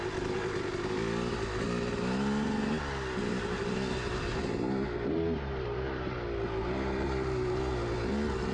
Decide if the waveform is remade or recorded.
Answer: recorded